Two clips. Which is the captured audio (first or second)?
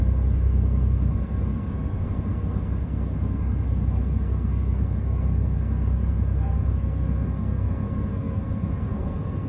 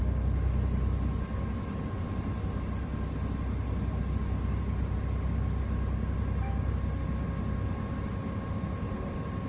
second